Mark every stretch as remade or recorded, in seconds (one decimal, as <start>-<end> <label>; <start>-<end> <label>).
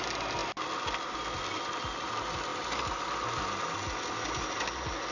0.0-5.1 recorded